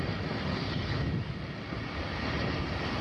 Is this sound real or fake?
real